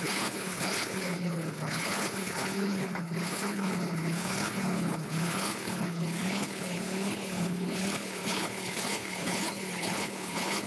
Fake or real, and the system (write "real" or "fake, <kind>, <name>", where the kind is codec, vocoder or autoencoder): fake, codec, HILCodec